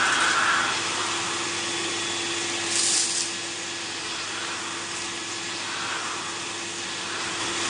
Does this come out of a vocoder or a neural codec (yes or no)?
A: no